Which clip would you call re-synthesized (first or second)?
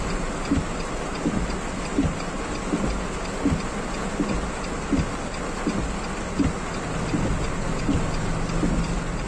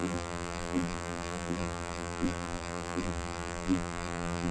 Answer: second